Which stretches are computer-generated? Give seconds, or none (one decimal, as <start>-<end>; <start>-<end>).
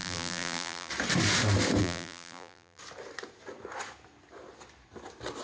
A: 0.0-0.9; 1.8-2.8